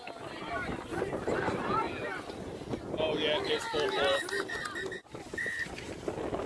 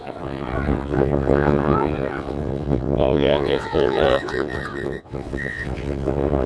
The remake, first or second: second